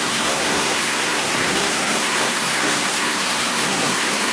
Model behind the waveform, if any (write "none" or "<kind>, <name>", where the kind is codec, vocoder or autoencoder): codec, SNAC